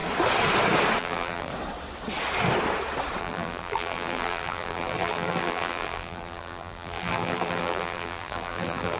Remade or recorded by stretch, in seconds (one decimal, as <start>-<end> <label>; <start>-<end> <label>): 0.0-1.0 recorded; 1.0-1.5 remade; 1.5-3.2 recorded; 3.2-9.0 remade